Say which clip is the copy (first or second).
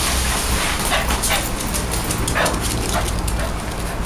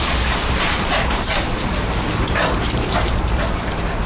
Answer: second